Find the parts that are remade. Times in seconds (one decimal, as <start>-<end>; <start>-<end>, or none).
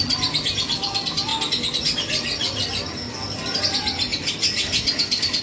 none